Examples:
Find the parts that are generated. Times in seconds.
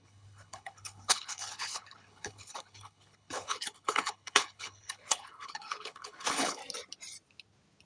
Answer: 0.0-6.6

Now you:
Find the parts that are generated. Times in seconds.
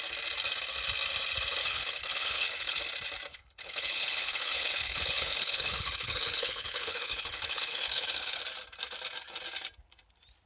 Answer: 1.6-2.8; 3.3-8.4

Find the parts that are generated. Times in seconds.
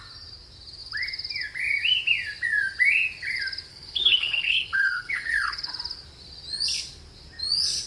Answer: 3.7-5.7